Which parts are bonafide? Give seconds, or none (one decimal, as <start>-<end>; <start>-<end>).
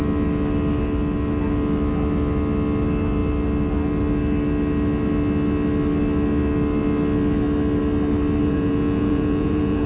0.0-8.4